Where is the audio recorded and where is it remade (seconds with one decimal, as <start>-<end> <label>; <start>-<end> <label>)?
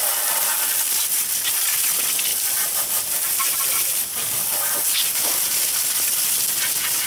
0.0-7.1 recorded